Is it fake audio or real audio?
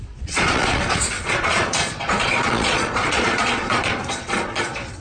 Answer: fake